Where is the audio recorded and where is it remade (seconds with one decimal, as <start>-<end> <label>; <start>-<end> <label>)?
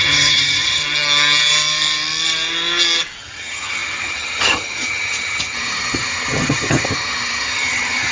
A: 0.0-0.8 remade; 0.8-3.2 recorded; 3.2-8.1 remade